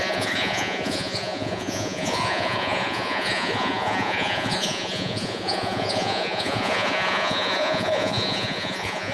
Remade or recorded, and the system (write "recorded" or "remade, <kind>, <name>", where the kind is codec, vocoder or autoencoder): remade, vocoder, Vocos